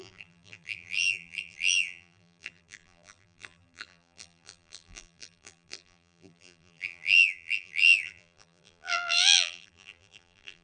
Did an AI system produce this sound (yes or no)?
yes